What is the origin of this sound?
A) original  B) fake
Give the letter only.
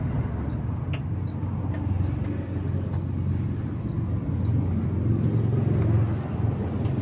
A